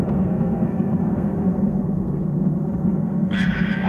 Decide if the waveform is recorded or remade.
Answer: remade